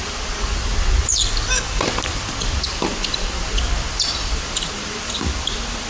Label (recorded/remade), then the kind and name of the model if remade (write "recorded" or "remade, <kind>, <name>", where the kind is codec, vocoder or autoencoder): remade, vocoder, BigVGAN v2